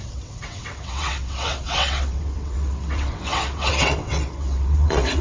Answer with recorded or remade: remade